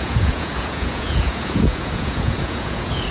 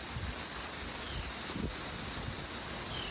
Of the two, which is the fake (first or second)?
first